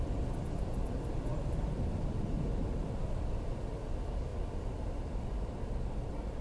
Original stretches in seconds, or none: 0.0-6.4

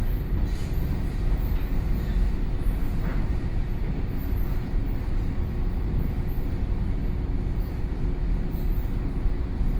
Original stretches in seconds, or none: 0.0-9.8